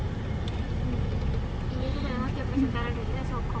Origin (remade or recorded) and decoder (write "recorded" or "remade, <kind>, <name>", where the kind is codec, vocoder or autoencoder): recorded